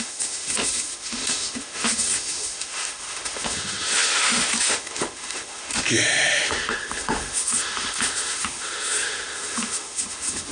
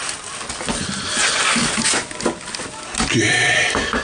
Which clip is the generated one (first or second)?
first